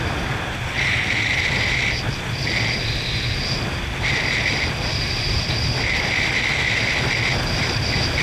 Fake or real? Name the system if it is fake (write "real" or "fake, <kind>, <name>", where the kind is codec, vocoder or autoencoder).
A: real